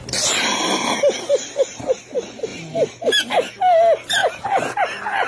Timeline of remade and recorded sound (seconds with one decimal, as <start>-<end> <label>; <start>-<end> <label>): 0.0-0.5 recorded; 0.5-2.0 remade; 2.0-2.5 recorded; 2.5-3.6 remade; 3.6-5.3 recorded